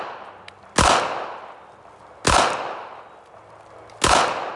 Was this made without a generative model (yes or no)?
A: yes